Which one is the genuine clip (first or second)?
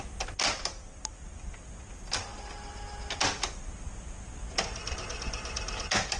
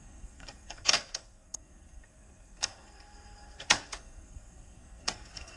first